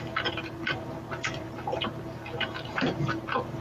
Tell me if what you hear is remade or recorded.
remade